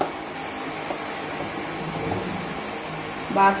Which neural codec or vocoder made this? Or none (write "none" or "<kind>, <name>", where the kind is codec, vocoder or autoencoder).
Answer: none